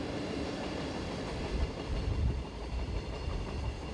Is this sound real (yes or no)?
no